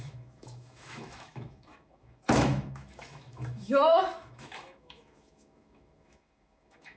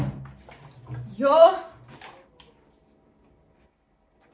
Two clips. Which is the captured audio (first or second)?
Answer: second